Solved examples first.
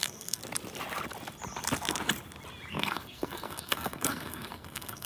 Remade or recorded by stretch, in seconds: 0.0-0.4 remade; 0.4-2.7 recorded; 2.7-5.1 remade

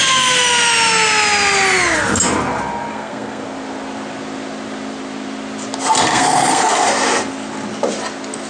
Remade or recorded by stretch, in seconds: 0.0-2.9 recorded; 2.9-3.4 remade; 3.4-6.1 recorded; 6.1-6.7 remade; 6.7-8.5 recorded

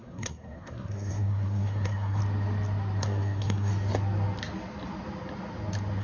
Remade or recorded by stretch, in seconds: 0.0-2.2 remade; 2.2-3.0 recorded; 3.0-3.7 remade; 3.7-6.0 recorded

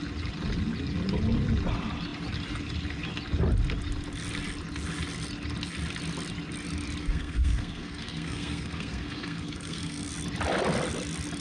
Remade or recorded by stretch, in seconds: 0.0-7.0 recorded; 7.0-10.1 remade; 10.1-11.4 recorded

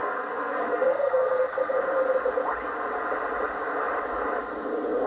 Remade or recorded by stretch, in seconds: 0.0-1.8 remade; 1.8-5.1 recorded

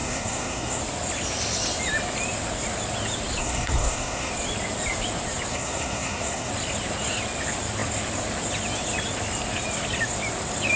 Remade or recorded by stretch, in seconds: 0.0-0.8 remade; 0.8-3.4 recorded; 3.4-4.3 remade; 4.3-5.5 recorded; 5.5-6.5 remade; 6.5-10.8 recorded

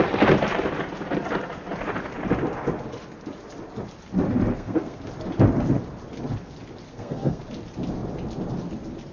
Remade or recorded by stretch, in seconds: 0.0-4.5 recorded; 4.5-5.0 remade; 5.0-6.9 recorded; 6.9-7.4 remade; 7.4-9.1 recorded

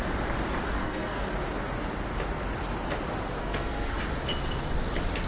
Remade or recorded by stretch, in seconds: 0.0-0.8 recorded; 0.8-1.3 remade; 1.3-3.4 recorded; 3.4-4.0 remade; 4.0-5.3 recorded